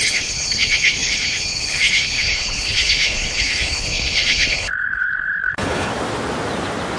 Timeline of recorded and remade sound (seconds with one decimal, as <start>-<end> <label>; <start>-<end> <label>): 0.0-5.9 remade; 5.9-7.0 recorded